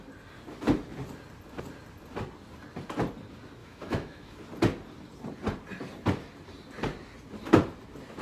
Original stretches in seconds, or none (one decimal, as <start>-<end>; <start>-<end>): 0.0-3.6; 4.4-8.2